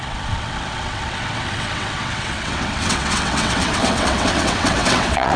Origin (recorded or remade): remade